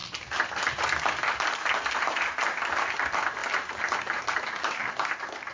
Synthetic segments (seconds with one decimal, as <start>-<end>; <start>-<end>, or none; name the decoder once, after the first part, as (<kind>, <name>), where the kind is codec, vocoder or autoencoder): 1.9-3.4 (vocoder, BigVGAN v2); 4.9-5.5